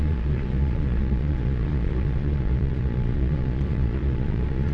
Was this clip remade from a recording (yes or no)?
yes